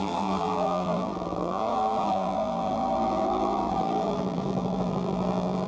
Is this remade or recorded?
remade